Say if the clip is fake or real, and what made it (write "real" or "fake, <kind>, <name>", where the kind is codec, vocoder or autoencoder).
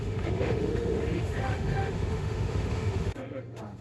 fake, autoencoder, DAC-VAE